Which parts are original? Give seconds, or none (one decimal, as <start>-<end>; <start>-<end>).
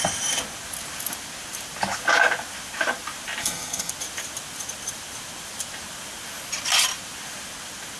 0.0-3.4; 3.9-8.0